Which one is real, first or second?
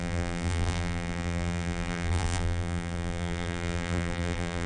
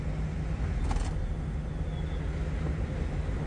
second